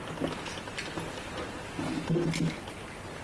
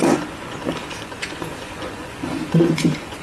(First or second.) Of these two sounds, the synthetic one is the second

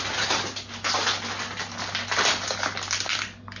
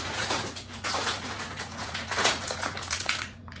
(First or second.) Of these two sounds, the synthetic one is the second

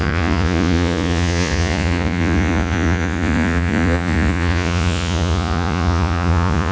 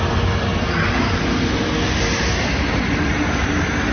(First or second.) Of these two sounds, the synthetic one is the first